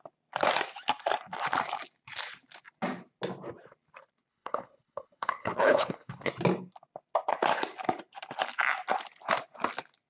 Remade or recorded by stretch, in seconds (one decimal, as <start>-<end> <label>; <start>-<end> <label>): 0.0-4.3 recorded; 4.3-6.3 remade; 6.3-10.1 recorded